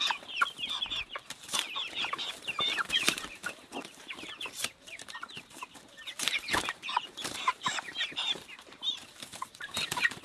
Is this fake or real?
fake